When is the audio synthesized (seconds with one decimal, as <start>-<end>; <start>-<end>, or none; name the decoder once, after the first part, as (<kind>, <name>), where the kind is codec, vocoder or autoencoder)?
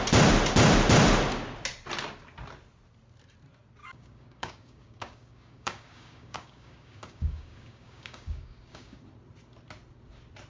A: 3.8-9.0 (codec, DAC)